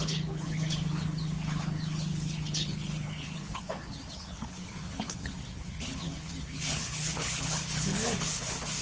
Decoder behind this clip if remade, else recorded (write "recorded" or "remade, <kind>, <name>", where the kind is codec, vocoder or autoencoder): remade, codec, HILCodec